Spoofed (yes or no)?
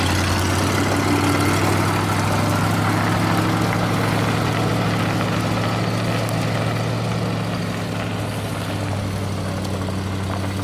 no